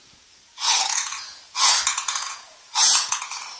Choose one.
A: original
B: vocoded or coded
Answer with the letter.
B